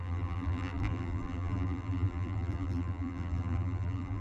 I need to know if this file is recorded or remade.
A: remade